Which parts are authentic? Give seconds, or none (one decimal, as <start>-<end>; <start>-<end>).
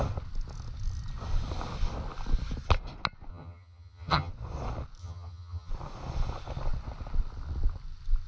0.0-3.3; 4.3-5.0; 5.7-8.3